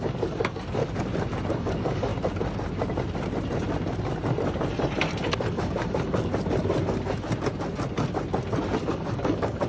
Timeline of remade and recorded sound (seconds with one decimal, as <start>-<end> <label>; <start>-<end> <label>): 0.0-0.8 remade; 0.8-1.5 recorded; 1.5-2.1 remade; 2.1-5.4 recorded; 5.4-6.3 remade; 6.3-8.8 recorded; 8.8-9.7 remade